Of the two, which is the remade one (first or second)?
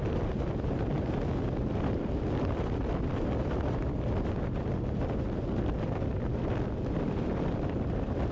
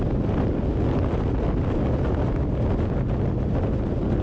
first